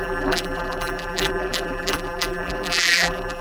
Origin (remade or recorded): remade